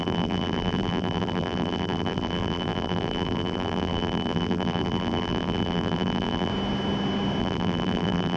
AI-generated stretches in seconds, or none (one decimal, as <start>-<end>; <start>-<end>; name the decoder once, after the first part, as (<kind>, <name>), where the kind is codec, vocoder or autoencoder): 0.0-6.5 (vocoder, BigVGAN v2); 7.4-8.4

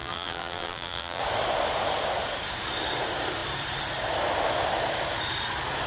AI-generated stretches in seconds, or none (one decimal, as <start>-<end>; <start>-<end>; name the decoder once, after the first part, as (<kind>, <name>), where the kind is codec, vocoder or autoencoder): 0.0-1.2 (vocoder, BigVGAN v2)

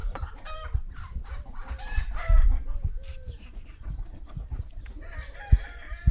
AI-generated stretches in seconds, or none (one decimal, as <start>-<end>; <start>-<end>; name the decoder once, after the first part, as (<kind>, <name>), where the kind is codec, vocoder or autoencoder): 0.0-2.5 (vocoder, BigVGAN v2)

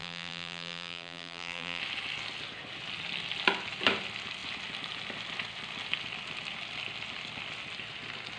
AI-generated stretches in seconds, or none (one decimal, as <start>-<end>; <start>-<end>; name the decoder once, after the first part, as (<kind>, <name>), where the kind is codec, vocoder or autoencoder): 0.0-1.8 (vocoder, BigVGAN v2)

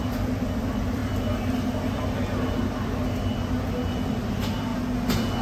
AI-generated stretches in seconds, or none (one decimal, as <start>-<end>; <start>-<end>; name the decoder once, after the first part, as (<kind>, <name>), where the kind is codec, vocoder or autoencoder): 0.0-1.0 (vocoder, BigVGAN v2); 4.2-4.7

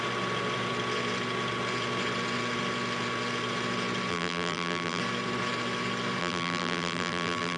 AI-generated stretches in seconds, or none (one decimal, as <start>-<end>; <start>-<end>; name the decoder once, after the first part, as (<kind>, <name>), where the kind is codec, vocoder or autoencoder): 4.1-5.0 (vocoder, BigVGAN v2); 6.2-7.6

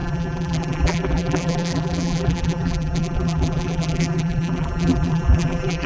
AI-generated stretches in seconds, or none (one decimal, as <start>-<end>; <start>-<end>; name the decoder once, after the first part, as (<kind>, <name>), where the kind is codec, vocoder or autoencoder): 0.0-5.9 (vocoder, BigVGAN v2)